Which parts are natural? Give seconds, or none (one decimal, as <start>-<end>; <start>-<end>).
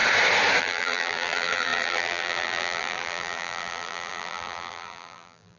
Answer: 0.0-0.6